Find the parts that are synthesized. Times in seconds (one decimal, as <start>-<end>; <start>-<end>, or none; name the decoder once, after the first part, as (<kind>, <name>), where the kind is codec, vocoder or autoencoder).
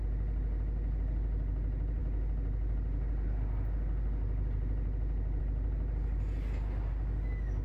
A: none